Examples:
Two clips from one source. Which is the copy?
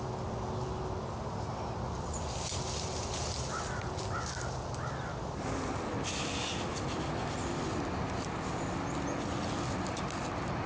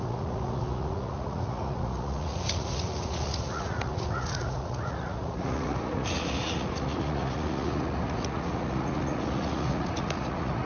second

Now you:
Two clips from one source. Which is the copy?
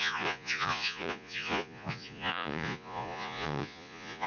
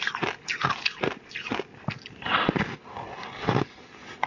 first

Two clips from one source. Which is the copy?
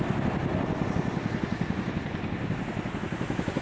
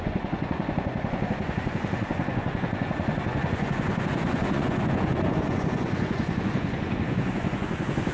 second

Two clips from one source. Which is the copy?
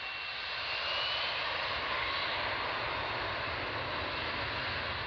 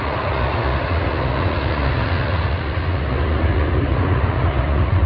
second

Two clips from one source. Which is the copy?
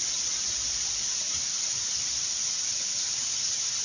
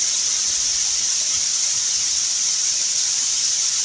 second